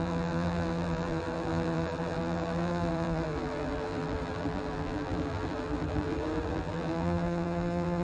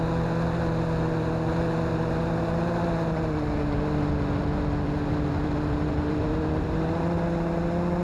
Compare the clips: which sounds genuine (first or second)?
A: second